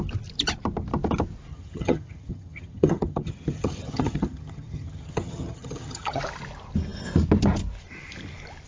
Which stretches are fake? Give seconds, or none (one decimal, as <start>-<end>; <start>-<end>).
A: 1.5-6.2